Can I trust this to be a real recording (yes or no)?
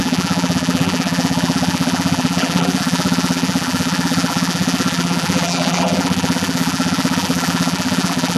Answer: no